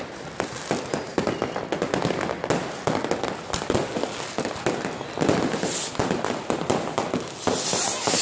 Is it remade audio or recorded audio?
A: recorded